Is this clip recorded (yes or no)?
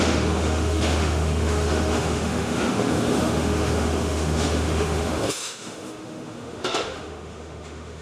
no